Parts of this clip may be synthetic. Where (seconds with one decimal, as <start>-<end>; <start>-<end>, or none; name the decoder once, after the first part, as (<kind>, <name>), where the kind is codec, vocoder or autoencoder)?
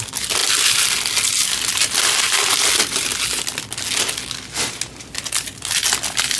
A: none